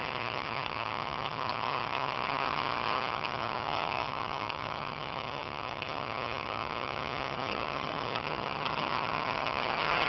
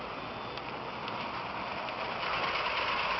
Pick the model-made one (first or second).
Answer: first